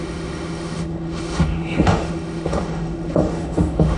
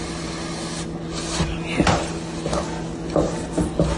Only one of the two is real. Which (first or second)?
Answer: second